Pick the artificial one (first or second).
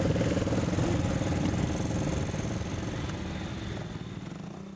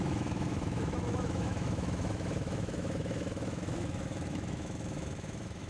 second